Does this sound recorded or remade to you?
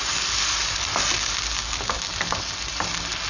recorded